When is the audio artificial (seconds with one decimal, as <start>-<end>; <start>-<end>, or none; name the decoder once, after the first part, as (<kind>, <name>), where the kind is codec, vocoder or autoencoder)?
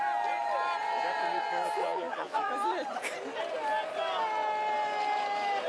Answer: 1.8-2.5 (vocoder, Vocos)